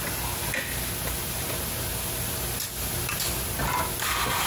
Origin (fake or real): real